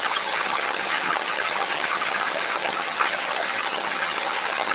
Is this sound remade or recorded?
remade